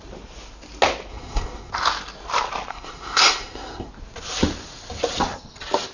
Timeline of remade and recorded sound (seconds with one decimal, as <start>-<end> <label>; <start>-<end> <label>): 0.0-1.1 recorded; 1.1-1.7 remade; 1.7-2.7 recorded; 2.7-3.9 remade; 3.9-5.9 recorded